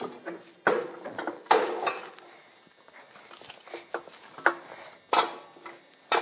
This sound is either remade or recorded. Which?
recorded